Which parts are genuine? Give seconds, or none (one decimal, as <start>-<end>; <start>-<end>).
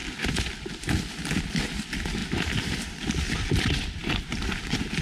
0.0-1.4; 2.2-3.5; 4.0-4.5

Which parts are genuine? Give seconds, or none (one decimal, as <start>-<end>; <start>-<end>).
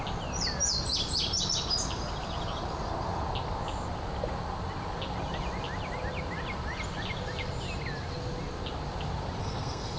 0.0-9.4